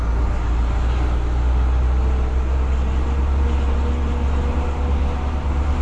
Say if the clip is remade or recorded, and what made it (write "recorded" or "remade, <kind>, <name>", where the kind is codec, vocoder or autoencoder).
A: recorded